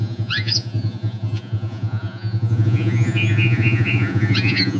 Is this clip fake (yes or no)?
yes